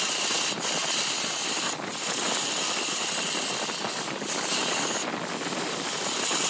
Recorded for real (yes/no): yes